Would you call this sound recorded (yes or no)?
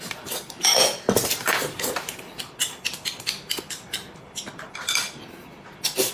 yes